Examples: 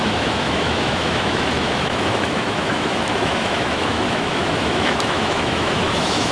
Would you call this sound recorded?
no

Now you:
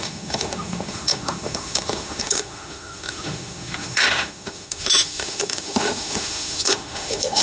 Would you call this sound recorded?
no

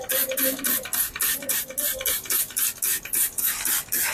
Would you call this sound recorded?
yes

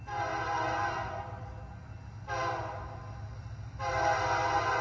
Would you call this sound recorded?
yes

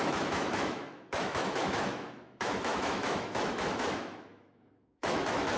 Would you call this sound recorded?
no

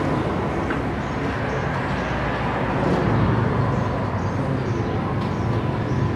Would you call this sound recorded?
yes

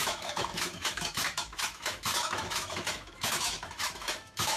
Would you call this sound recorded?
no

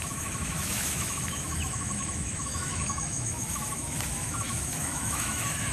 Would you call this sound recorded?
no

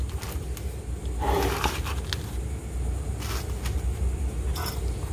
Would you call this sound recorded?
yes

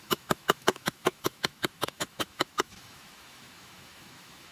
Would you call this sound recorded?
no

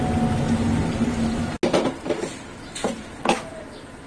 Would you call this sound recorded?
yes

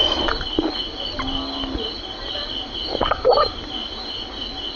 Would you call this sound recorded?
yes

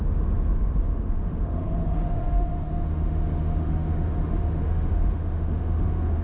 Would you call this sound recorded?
no